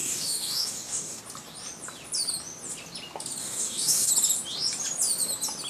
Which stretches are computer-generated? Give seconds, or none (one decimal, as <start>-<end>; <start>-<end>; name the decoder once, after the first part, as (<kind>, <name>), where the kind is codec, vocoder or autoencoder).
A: 0.0-1.2 (codec, DAC); 3.4-4.1